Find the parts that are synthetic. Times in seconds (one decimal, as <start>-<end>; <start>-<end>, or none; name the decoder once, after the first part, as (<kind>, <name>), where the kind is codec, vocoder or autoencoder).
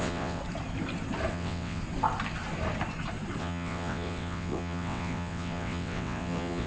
0.0-0.4 (vocoder, WaveNeXt); 1.3-1.8; 3.4-6.7